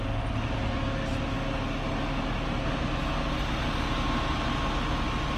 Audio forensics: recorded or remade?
recorded